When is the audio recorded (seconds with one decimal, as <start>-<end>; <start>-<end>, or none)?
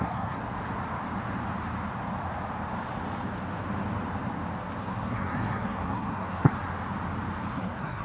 0.4-4.8; 6.6-7.5